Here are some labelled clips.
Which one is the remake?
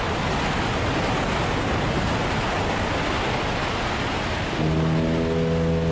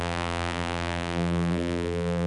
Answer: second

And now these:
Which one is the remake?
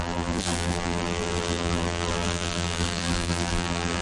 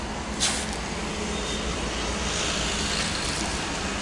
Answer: first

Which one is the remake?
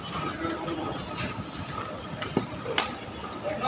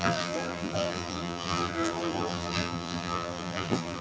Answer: second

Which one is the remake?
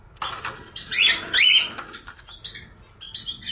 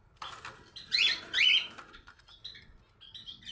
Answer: second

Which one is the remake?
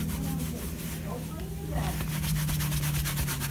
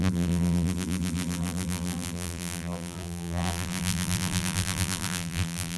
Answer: second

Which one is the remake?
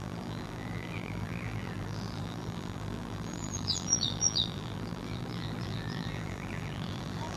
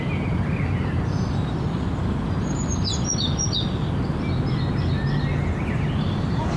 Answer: first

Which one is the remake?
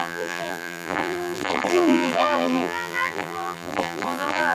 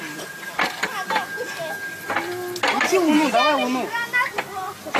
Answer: first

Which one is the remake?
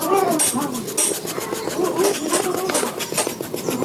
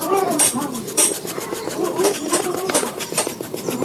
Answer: second